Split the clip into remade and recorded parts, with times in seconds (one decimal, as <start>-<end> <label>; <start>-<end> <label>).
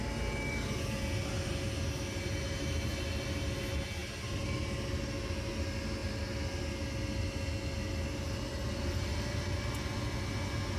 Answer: 0.0-2.9 recorded; 2.9-3.6 remade; 3.6-10.8 recorded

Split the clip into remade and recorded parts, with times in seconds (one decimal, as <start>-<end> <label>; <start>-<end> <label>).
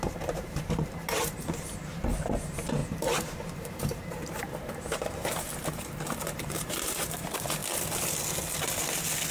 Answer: 0.0-7.6 remade; 7.6-9.3 recorded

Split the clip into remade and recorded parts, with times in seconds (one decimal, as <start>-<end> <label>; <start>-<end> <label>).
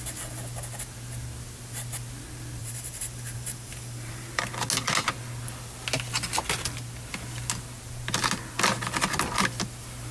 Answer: 0.0-2.6 recorded; 2.6-4.4 remade; 4.4-10.1 recorded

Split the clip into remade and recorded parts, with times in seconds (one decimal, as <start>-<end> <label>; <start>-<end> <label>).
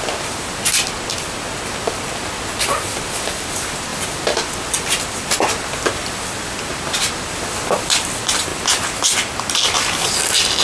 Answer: 0.0-0.5 remade; 0.5-2.9 recorded; 2.9-8.5 remade; 8.5-9.6 recorded; 9.6-10.6 remade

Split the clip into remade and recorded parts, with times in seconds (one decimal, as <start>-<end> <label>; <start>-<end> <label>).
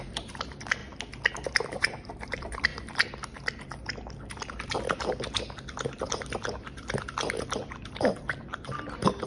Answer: 0.0-0.8 remade; 0.8-1.7 recorded; 1.7-2.7 remade; 2.7-7.9 recorded; 7.9-9.3 remade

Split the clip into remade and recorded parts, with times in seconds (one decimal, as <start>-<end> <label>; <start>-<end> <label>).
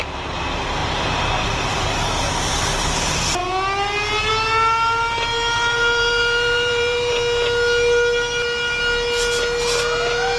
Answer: 0.0-5.3 recorded; 5.3-7.1 remade; 7.1-10.4 recorded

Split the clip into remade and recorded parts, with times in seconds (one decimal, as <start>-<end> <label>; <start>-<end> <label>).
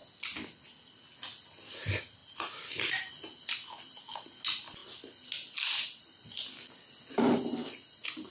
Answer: 0.0-8.3 recorded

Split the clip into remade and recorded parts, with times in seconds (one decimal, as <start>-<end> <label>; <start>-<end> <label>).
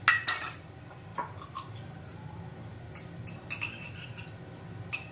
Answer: 0.0-1.1 recorded; 1.1-2.9 remade; 2.9-5.1 recorded